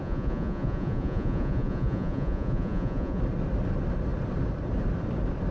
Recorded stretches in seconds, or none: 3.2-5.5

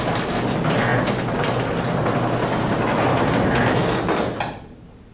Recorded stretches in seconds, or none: 0.0-5.1

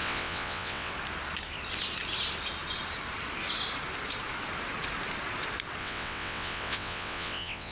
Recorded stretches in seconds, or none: 0.9-5.8